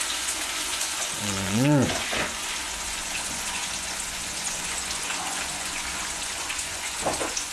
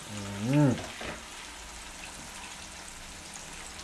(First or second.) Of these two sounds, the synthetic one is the first